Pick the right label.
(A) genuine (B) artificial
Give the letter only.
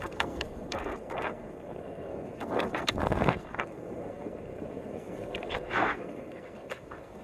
B